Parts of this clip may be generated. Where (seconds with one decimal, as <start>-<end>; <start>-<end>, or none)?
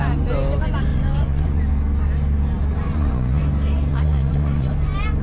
0.9-1.6; 2.9-3.4; 3.9-4.7